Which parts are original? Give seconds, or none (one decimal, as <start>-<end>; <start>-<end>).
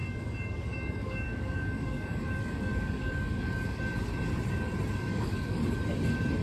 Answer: 3.8-5.1; 5.6-6.4